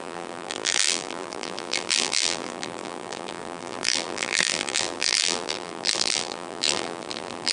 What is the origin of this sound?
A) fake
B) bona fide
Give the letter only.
A